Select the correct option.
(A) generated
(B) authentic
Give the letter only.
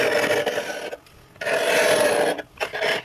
B